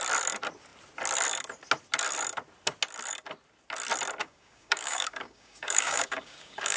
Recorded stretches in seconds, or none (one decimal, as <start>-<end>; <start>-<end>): 0.0-4.2